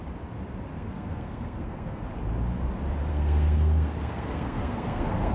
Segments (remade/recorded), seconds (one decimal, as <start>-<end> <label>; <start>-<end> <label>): 0.0-0.7 recorded; 0.7-2.0 remade; 2.0-3.1 recorded; 3.1-5.3 remade

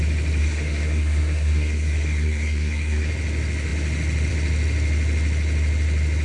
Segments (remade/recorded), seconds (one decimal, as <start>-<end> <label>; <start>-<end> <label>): 0.0-0.4 recorded; 0.4-3.1 remade; 3.1-6.2 recorded

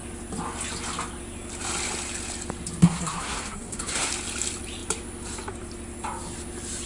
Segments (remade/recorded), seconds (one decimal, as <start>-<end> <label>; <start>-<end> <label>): 0.0-2.8 recorded; 2.8-4.1 remade; 4.1-6.9 recorded

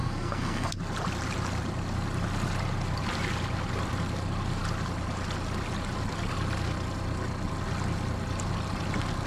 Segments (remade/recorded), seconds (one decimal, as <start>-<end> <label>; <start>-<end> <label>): 0.0-0.8 remade; 0.8-9.3 recorded